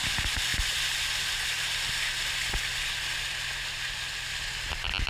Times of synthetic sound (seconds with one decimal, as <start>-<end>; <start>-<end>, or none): none